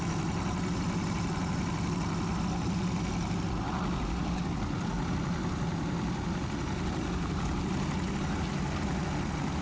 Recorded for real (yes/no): yes